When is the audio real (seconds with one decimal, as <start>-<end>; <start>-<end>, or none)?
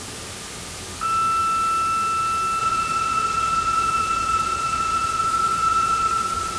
0.0-2.6